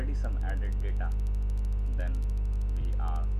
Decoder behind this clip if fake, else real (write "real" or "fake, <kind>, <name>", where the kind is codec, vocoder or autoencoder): real